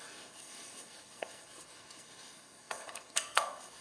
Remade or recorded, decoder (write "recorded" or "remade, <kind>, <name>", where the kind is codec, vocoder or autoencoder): remade, codec, SNAC